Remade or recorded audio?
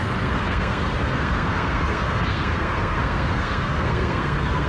remade